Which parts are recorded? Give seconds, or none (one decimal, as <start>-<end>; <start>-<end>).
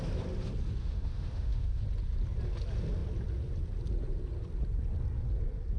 0.0-0.8; 1.8-5.8